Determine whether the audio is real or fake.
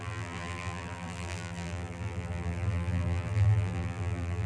fake